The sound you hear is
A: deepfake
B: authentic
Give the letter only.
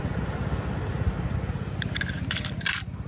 B